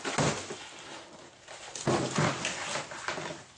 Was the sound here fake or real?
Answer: real